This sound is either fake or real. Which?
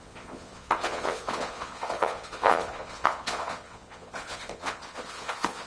fake